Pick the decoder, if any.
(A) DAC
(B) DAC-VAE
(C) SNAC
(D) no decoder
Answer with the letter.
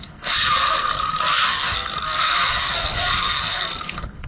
C